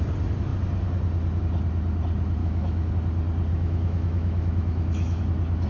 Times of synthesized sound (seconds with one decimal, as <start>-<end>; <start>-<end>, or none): 2.4-2.9; 3.5-5.2